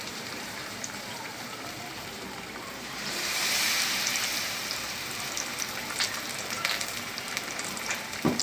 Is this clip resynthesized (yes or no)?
yes